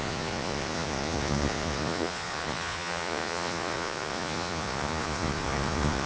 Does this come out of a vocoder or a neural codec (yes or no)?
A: yes